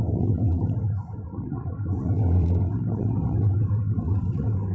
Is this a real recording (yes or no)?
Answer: no